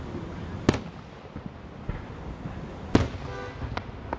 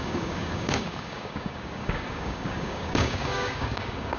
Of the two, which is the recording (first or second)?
first